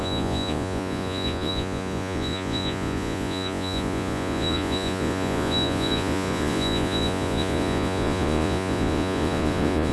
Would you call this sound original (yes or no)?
no